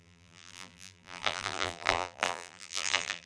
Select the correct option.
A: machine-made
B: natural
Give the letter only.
A